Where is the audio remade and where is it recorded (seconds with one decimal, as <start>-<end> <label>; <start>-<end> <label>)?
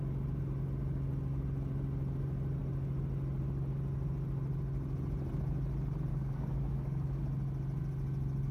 0.0-6.1 recorded; 6.1-7.2 remade; 7.2-8.5 recorded